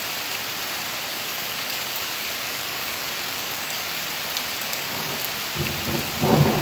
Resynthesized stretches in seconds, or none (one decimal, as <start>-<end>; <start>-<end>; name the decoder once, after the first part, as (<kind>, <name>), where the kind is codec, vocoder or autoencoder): 1.1-4.0 (codec, DAC); 4.6-5.1